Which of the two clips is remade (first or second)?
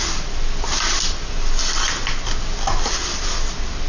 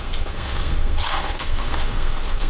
second